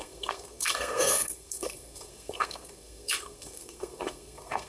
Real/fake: fake